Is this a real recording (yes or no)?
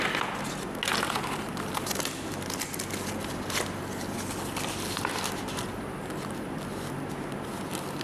yes